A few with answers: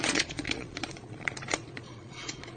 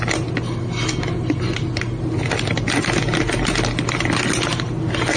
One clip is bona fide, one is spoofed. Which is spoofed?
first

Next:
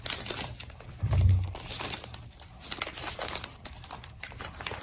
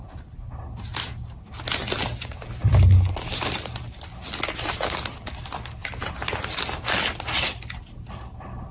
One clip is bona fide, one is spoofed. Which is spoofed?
first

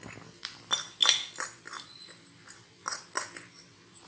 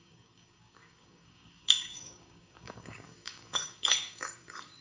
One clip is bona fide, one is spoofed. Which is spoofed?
second